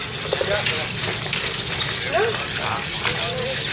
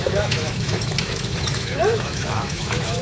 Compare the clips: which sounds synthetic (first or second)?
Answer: second